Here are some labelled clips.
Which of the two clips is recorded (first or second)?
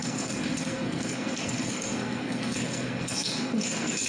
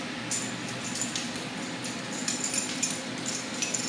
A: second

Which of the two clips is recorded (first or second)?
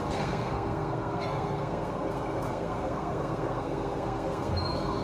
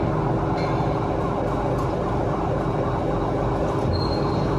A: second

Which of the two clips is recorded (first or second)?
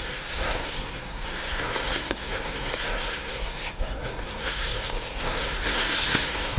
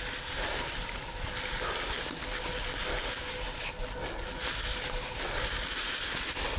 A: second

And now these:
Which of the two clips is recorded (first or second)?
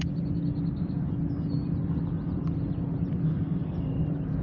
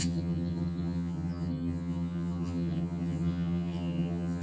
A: first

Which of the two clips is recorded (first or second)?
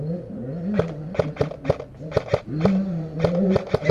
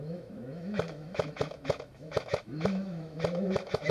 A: first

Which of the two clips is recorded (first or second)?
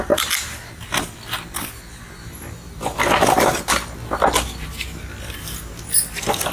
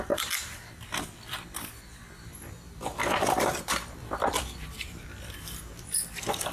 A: first